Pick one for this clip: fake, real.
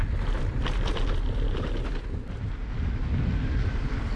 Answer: real